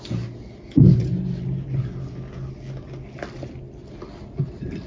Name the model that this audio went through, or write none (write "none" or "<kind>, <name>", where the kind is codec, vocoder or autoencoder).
none